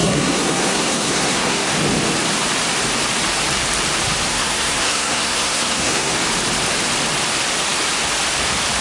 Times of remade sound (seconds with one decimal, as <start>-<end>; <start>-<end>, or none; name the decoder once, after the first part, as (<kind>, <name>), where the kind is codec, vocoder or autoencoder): 0.0-1.7 (codec, SNAC); 4.3-6.1